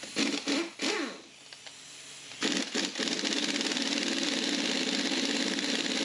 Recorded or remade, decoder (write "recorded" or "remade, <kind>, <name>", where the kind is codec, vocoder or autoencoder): recorded